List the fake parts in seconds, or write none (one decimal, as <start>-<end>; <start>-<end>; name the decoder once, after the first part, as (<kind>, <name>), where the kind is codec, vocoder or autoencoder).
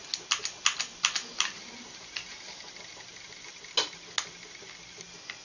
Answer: 0.9-3.7 (vocoder, BigVGAN v2)